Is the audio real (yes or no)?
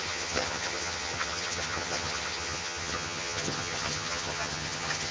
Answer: no